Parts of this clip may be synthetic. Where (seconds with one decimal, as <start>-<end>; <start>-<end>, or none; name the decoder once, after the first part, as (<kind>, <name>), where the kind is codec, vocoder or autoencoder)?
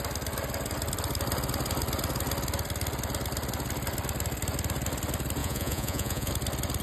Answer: 5.4-6.3 (vocoder, Vocos)